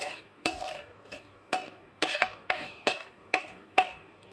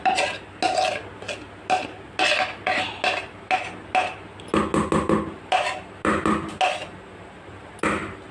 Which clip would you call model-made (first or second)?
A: first